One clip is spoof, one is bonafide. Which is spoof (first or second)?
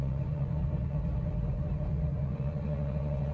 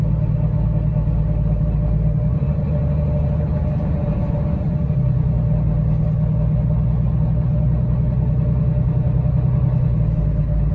first